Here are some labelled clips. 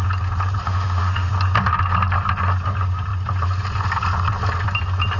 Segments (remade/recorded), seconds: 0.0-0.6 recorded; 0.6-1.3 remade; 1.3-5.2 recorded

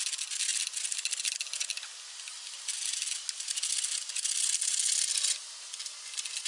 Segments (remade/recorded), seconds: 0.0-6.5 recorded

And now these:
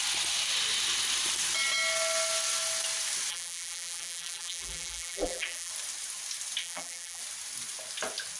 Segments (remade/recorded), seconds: 0.0-3.3 recorded; 3.3-5.7 remade; 5.7-6.6 recorded; 6.6-7.2 remade; 7.2-8.4 recorded